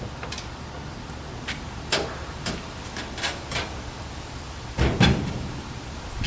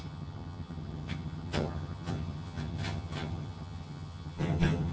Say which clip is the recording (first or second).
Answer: first